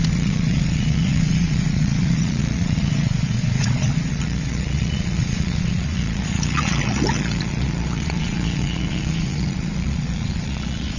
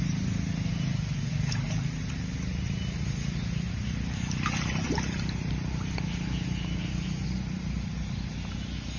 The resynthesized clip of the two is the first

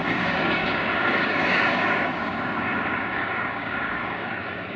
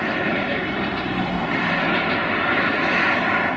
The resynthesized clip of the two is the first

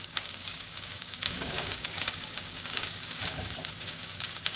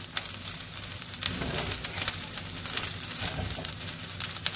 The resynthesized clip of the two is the first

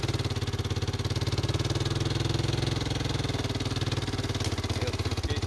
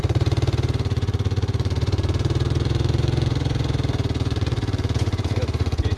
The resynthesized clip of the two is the second